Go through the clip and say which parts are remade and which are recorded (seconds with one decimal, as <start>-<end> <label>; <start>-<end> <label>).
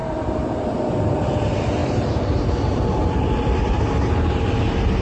0.0-1.3 remade; 1.3-1.8 recorded; 1.8-5.0 remade